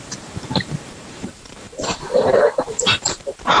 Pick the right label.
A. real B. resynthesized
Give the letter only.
B